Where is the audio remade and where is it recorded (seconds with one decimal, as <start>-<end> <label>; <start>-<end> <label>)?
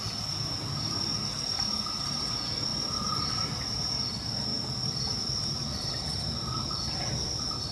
0.0-7.7 recorded